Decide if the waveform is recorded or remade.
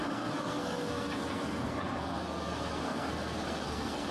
remade